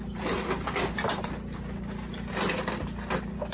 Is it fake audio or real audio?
real